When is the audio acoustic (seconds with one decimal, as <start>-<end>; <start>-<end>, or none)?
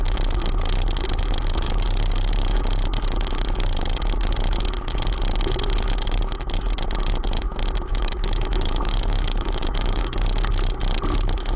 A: 0.0-7.9; 10.0-11.6